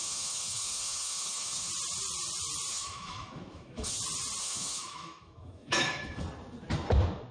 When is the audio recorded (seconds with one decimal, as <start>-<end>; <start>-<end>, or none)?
1.7-2.7; 4.0-4.4; 6.2-7.3